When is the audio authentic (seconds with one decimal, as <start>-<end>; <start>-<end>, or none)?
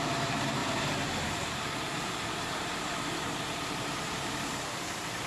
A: none